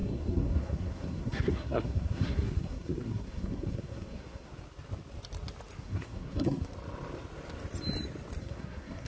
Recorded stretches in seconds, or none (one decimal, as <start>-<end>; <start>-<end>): 4.5-5.8; 6.7-8.4